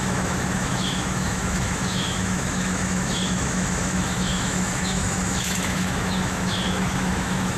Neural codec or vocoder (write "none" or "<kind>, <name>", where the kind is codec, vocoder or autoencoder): autoencoder, DAC-VAE